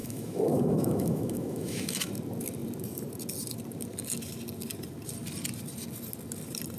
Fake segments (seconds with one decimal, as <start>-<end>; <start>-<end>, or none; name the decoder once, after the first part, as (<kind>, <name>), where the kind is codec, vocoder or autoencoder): 0.0-2.1 (autoencoder, DAC-VAE)